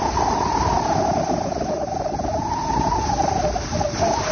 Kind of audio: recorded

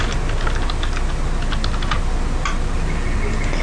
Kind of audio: recorded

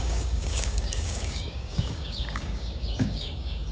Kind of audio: remade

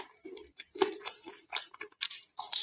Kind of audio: recorded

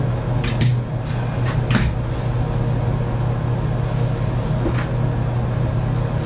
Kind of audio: recorded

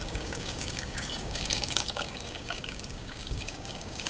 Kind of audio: remade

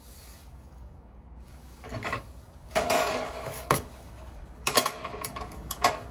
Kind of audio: remade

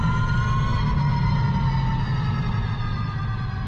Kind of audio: recorded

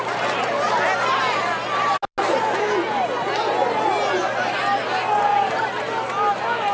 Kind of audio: recorded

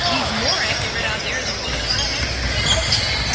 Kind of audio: recorded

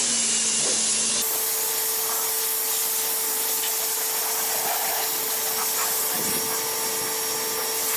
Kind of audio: recorded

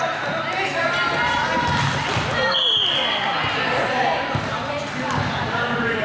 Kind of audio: recorded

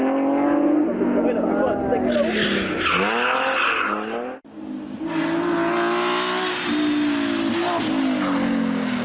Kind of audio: recorded